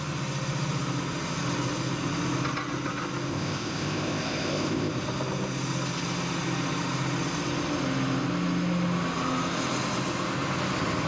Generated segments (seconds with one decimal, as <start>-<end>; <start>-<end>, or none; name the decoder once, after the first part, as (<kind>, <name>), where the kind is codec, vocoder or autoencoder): 3.3-4.9 (codec, ZipCodec)